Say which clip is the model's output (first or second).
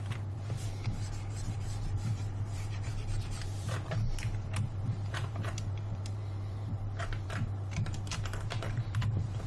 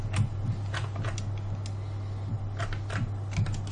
first